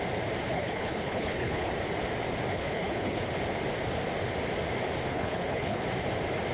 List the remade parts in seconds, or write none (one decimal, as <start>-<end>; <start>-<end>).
0.5-1.7; 2.5-3.2; 5.1-5.8